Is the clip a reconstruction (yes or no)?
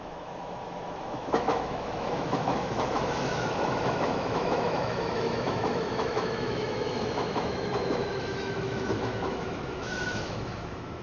yes